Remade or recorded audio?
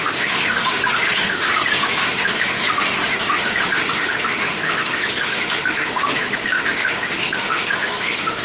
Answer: remade